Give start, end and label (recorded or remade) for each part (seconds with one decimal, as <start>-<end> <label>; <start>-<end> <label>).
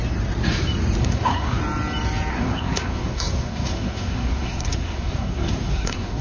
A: 0.0-1.0 recorded; 1.0-1.6 remade; 1.6-2.3 recorded; 2.3-6.2 remade